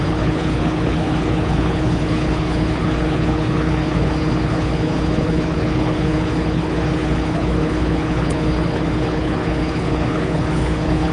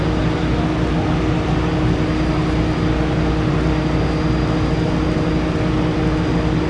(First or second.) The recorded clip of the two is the second